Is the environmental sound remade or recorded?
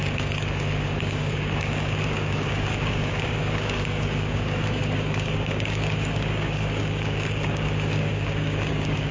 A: remade